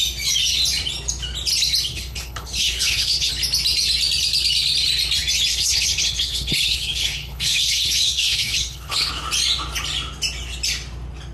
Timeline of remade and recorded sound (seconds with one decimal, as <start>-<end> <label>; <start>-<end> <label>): 0.0-1.9 recorded; 1.9-3.3 remade; 3.3-5.5 recorded; 5.5-9.1 remade; 9.1-11.3 recorded